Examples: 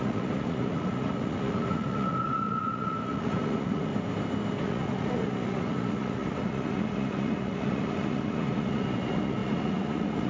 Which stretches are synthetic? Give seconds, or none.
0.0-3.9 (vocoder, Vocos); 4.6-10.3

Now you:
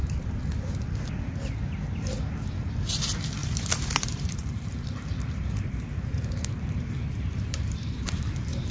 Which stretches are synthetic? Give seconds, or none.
3.4-8.7 (vocoder, BigVGAN v2)

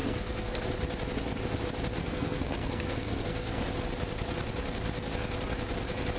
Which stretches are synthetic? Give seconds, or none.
0.0-0.6 (codec, SNAC); 2.0-3.6